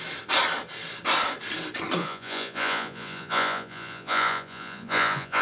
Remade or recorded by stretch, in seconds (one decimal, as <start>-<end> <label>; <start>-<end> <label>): 0.0-2.0 recorded; 2.0-5.4 remade